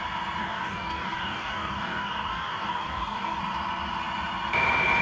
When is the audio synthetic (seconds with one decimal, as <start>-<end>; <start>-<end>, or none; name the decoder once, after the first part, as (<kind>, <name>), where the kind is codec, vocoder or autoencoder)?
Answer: 0.4-3.4 (codec, DAC)